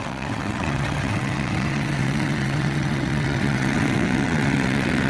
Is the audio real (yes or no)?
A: no